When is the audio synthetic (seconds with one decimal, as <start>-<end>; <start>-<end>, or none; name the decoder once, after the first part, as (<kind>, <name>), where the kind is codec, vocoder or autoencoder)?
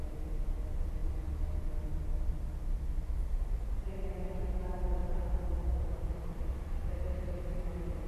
5.0-7.6 (vocoder, BigVGAN v2)